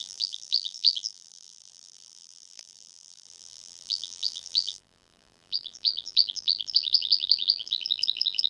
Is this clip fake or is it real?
fake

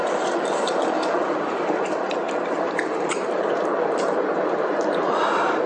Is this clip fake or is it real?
fake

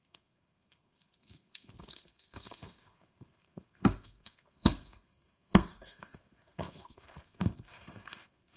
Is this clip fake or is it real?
fake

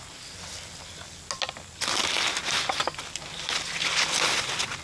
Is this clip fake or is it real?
real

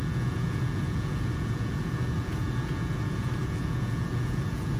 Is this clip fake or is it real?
fake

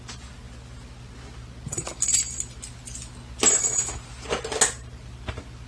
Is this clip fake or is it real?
real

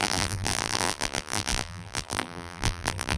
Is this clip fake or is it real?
fake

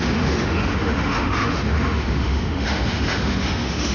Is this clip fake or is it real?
fake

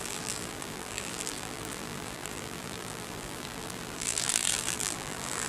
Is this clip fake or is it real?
fake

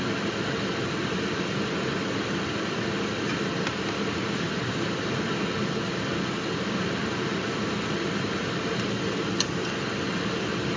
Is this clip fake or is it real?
real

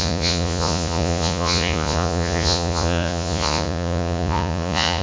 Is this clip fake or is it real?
fake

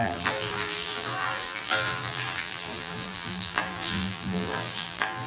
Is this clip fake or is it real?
fake